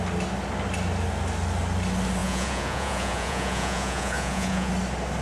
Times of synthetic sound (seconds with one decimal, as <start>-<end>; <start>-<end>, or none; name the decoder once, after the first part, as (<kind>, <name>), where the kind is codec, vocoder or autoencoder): 2.2-4.7 (vocoder, Vocos)